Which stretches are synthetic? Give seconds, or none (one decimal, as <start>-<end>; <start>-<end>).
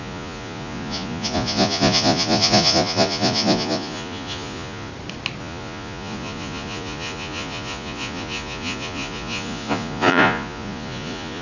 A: 0.0-4.9; 5.4-11.4